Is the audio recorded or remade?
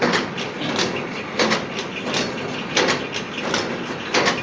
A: recorded